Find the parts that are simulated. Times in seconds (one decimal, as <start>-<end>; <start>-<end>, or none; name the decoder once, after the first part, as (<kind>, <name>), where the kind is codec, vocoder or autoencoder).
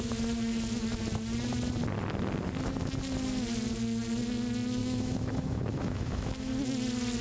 4.8-6.5 (autoencoder, DAC-VAE)